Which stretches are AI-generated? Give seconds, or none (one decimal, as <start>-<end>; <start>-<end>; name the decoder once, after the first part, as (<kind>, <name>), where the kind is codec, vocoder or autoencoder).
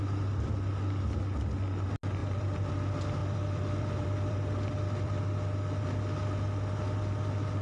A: 2.2-2.7 (vocoder, BigVGAN v2); 3.2-5.2